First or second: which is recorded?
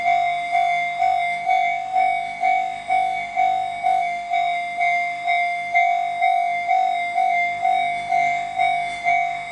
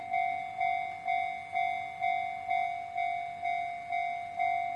second